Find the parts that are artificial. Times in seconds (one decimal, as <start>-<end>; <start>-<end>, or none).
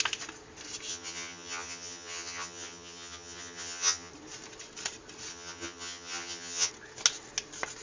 0.9-4.1; 5.3-6.7